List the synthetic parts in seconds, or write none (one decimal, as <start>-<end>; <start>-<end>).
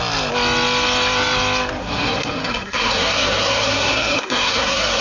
1.8-5.0